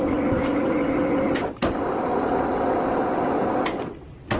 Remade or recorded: recorded